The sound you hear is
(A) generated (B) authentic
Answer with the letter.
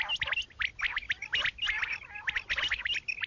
B